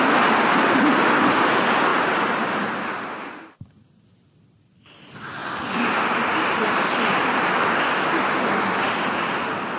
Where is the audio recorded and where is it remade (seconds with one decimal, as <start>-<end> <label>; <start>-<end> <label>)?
0.0-9.8 recorded